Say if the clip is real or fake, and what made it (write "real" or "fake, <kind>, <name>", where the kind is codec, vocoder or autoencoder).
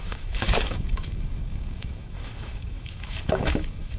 fake, autoencoder, DAC-VAE